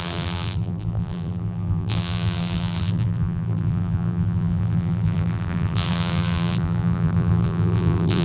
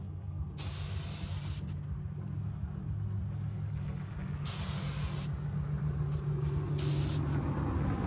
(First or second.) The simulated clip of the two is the first